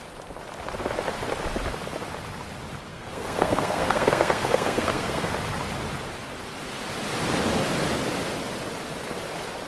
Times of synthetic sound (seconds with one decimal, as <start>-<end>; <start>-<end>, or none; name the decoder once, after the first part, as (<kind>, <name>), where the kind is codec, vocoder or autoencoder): 2.9-5.3 (codec, SNAC)